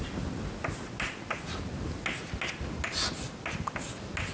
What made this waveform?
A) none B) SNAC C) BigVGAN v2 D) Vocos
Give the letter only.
A